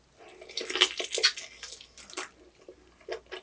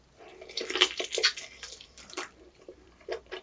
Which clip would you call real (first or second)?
first